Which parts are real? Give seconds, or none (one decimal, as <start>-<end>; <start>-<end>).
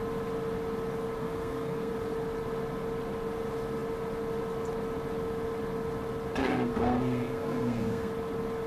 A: 0.0-1.2; 1.9-6.4; 8.1-8.7